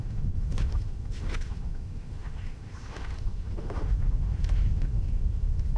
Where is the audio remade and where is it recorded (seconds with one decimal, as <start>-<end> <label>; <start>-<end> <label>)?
0.0-5.8 remade